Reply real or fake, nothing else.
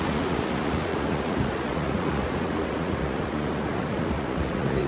fake